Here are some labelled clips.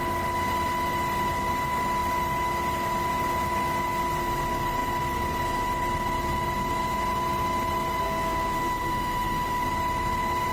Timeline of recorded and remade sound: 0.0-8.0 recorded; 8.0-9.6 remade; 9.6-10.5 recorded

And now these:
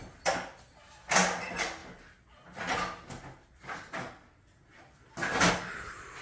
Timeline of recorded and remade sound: 0.0-6.2 recorded

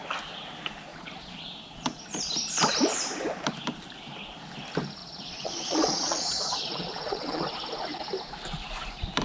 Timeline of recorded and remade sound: 0.0-0.9 recorded; 0.9-2.0 remade; 2.0-5.0 recorded; 5.0-7.4 remade; 7.4-9.2 recorded

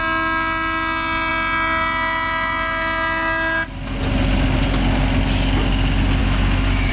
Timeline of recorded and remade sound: 0.0-6.2 recorded; 6.2-6.9 remade

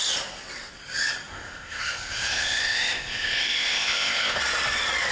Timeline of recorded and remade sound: 0.0-1.3 recorded; 1.3-4.4 remade; 4.4-5.1 recorded

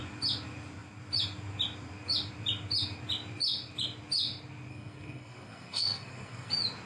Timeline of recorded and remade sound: 0.0-4.7 recorded; 4.7-6.5 remade; 6.5-6.9 recorded

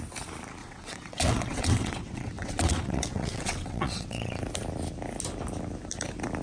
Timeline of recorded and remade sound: 0.0-0.6 recorded; 0.6-4.4 remade; 4.4-6.4 recorded